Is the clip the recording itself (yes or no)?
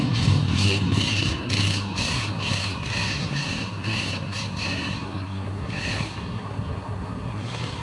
no